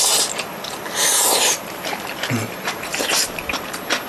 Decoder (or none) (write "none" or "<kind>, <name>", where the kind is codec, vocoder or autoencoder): vocoder, BigVGAN v2